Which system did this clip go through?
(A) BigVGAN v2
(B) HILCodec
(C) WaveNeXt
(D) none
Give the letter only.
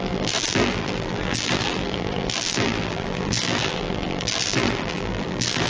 A